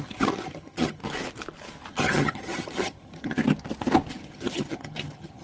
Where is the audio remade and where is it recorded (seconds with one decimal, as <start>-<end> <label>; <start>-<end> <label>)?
0.0-1.0 remade; 1.0-1.9 recorded; 1.9-3.4 remade; 3.4-4.1 recorded; 4.1-5.4 remade